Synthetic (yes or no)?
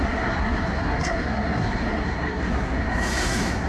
yes